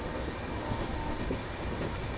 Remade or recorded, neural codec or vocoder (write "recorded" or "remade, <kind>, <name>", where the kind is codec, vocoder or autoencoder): recorded